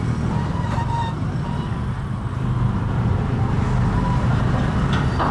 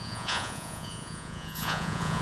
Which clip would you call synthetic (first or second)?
second